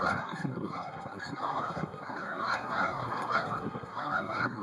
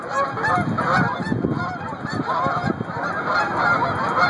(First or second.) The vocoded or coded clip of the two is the first